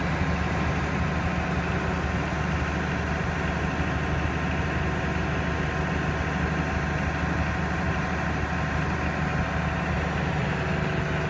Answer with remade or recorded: recorded